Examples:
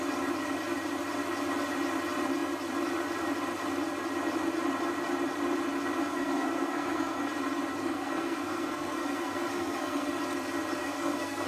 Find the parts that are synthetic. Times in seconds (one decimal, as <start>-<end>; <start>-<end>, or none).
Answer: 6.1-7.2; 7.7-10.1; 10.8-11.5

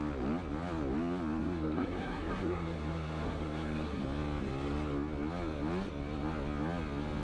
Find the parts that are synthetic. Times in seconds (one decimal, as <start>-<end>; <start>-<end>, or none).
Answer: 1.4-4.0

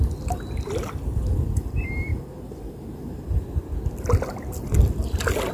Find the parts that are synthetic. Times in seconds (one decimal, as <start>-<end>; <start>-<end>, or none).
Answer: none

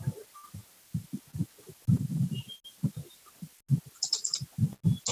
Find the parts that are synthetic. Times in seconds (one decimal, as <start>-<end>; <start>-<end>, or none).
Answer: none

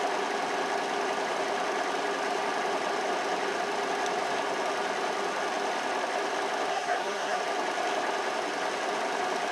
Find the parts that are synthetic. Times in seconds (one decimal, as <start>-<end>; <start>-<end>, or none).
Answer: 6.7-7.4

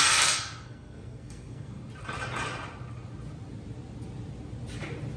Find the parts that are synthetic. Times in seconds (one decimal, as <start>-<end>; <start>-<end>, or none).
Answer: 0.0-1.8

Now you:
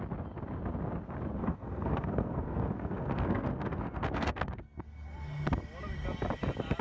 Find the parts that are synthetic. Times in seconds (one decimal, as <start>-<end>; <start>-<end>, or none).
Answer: 1.4-4.8